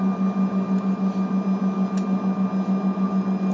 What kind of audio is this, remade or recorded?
recorded